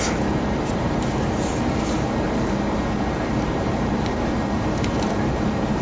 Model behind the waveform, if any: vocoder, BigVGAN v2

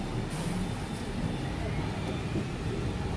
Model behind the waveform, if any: none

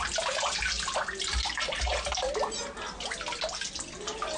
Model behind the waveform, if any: none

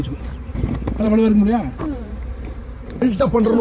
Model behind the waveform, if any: vocoder, BigVGAN v2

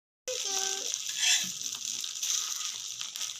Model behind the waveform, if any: none